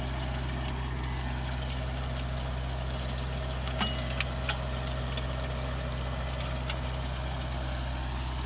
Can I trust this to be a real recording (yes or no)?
yes